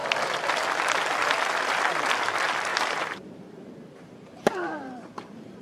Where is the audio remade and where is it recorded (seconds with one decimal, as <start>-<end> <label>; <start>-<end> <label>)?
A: 0.0-2.7 recorded; 2.7-5.6 remade